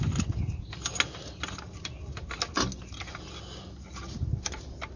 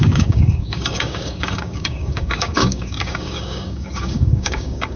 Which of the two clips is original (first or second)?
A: first